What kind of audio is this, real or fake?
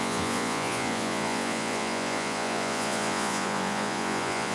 fake